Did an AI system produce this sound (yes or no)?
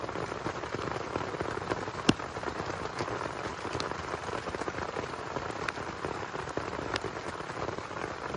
no